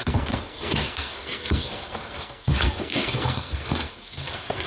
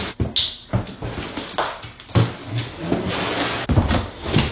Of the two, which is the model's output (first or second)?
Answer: first